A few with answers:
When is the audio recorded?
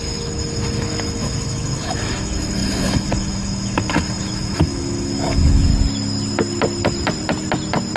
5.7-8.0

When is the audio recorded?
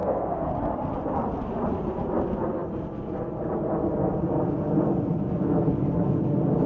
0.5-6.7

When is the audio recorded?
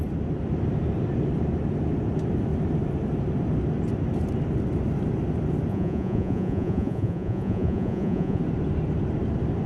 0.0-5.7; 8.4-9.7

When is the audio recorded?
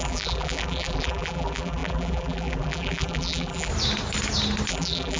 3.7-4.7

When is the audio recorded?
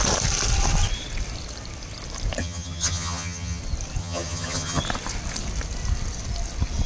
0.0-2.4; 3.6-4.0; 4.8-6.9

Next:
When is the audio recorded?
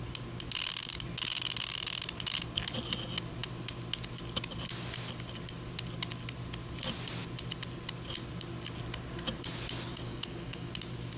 0.0-9.9; 10.7-11.2